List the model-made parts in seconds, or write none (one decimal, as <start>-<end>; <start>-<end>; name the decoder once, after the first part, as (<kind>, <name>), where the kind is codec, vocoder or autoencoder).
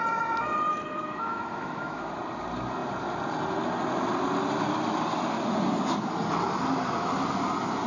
0.7-2.1 (autoencoder, DAC-VAE)